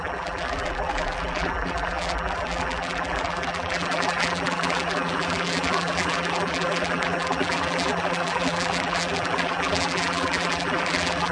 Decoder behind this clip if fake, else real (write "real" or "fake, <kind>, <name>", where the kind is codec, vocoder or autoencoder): fake, vocoder, BigVGAN v2